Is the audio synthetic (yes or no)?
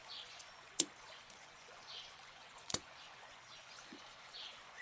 yes